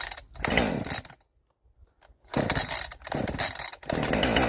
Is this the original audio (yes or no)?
yes